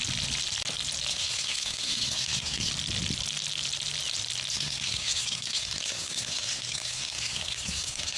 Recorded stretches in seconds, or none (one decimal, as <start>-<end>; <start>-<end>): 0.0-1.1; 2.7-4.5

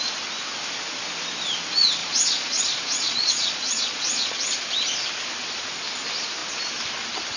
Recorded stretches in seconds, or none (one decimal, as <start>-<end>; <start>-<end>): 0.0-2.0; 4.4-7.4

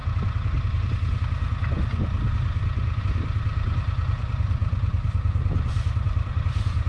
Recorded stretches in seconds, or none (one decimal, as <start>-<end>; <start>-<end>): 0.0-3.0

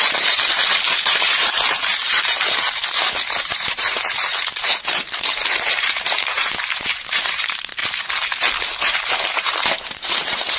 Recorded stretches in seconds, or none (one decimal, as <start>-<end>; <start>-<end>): 7.8-8.6

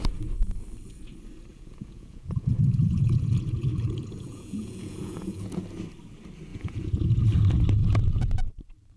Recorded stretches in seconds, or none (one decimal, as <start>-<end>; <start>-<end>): 0.0-1.5; 5.6-6.5; 7.2-7.8; 8.5-9.0

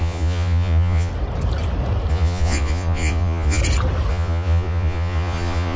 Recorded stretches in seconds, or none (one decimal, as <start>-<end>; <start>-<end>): 1.1-2.1; 3.6-4.1

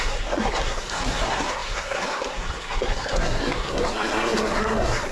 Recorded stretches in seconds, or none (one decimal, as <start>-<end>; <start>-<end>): none

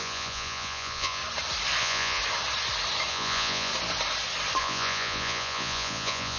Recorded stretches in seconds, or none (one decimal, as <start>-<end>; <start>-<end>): 1.2-1.8; 2.2-3.1; 3.7-4.6